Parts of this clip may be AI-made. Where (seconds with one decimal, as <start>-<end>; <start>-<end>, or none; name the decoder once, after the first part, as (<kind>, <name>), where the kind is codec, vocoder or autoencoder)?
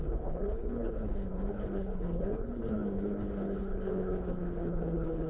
0.0-5.3 (codec, HILCodec)